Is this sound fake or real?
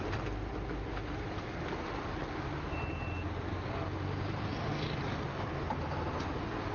real